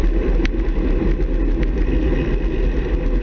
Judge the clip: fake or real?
real